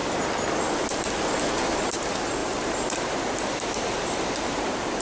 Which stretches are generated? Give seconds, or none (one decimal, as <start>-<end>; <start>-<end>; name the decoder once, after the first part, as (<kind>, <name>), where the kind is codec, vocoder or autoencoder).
1.9-5.0 (vocoder, BigVGAN v2)